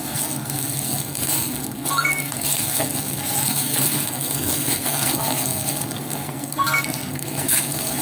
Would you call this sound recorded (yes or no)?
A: no